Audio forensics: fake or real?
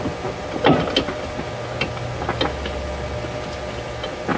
real